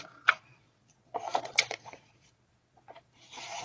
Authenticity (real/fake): fake